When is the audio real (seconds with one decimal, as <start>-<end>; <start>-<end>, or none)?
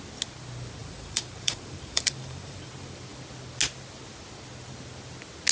0.0-0.8; 2.7-5.5